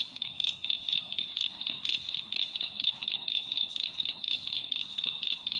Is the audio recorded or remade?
remade